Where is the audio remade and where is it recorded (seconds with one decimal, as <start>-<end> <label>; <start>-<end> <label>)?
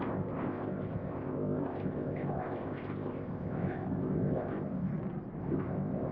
0.0-4.9 remade; 4.9-5.4 recorded; 5.4-6.1 remade